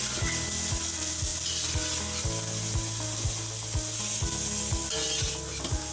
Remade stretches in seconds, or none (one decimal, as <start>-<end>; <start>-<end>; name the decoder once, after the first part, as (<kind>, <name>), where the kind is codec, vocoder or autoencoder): none

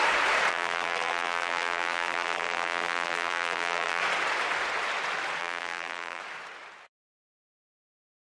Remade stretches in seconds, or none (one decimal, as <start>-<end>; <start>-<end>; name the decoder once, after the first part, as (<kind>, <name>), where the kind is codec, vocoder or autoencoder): 0.5-4.0 (vocoder, BigVGAN v2); 5.4-6.2

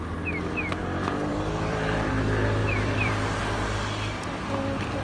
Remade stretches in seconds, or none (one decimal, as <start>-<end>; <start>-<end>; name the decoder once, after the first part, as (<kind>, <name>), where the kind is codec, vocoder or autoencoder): 1.3-2.1 (vocoder, BigVGAN v2); 2.6-3.4